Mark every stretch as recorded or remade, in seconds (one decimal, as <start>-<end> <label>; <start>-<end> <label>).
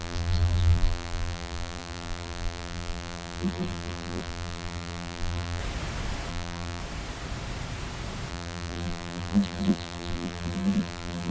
0.0-5.6 remade; 5.6-6.3 recorded; 6.3-6.8 remade; 6.8-8.3 recorded; 8.3-11.3 remade